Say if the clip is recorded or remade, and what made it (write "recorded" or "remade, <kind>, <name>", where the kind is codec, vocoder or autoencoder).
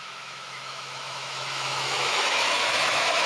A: remade, autoencoder, DAC-VAE